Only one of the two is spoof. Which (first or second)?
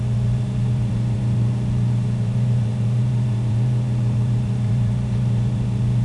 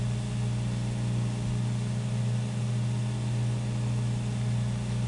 first